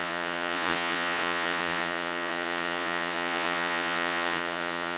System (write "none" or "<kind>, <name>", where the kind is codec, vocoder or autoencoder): vocoder, Vocos